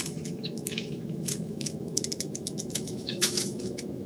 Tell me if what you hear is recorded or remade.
remade